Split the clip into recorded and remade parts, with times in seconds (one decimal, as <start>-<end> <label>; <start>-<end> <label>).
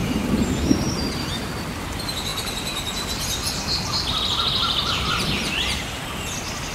0.0-2.3 remade; 2.3-5.1 recorded; 5.1-6.0 remade; 6.0-6.7 recorded